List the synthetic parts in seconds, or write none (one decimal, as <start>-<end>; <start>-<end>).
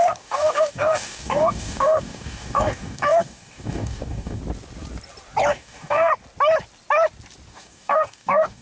0.0-4.4; 5.5-6.1; 7.5-8.6